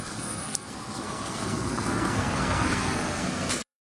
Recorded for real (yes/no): no